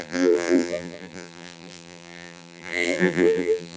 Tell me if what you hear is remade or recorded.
remade